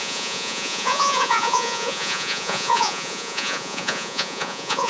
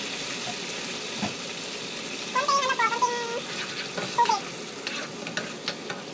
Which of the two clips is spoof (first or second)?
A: first